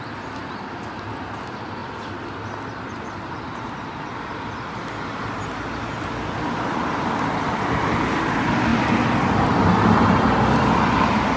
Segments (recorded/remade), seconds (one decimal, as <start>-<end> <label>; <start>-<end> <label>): 0.0-11.4 recorded

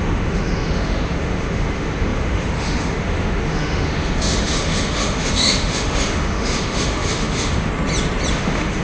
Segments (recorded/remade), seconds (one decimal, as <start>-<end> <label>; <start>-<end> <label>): 0.0-7.7 remade; 7.7-8.3 recorded; 8.3-8.8 remade

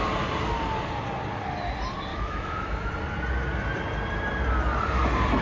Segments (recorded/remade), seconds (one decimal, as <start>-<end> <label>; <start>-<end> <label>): 0.0-2.1 recorded; 2.1-2.9 remade; 2.9-5.4 recorded

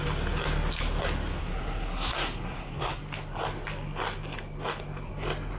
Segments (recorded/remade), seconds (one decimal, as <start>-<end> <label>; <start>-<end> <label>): 0.0-1.4 recorded; 1.4-3.0 remade; 3.0-5.6 recorded

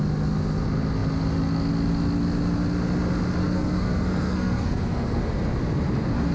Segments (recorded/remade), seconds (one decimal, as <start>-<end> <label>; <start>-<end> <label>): 0.0-3.4 recorded; 3.4-5.2 remade; 5.2-6.3 recorded

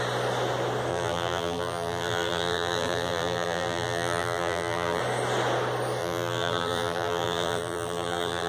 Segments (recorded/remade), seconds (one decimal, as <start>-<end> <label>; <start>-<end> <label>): 0.0-0.9 recorded; 0.9-5.0 remade; 5.0-6.0 recorded; 6.0-8.5 remade